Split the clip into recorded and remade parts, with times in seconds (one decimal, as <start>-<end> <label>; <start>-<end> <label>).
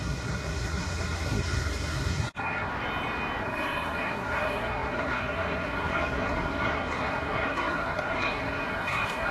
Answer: 0.0-2.7 remade; 2.7-3.4 recorded; 3.4-9.3 remade